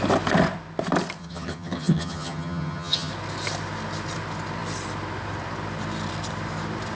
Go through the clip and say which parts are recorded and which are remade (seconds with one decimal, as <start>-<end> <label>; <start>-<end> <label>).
0.0-1.2 recorded; 1.2-3.1 remade; 3.1-6.9 recorded